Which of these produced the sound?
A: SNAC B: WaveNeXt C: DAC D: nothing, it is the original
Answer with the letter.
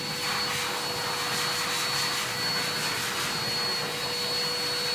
D